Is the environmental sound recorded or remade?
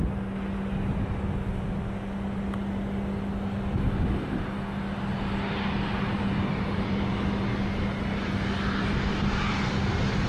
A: recorded